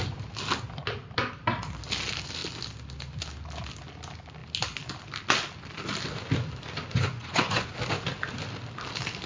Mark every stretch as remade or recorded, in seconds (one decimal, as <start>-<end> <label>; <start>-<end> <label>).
0.0-6.9 recorded; 6.9-7.7 remade; 7.7-9.3 recorded